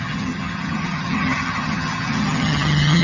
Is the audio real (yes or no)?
no